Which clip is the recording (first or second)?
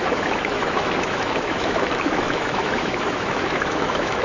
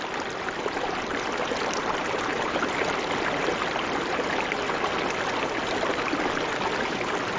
second